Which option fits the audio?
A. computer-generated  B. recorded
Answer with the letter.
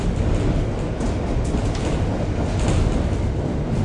B